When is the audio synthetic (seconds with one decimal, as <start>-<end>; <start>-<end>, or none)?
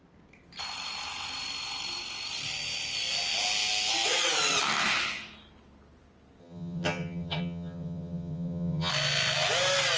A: 6.4-8.9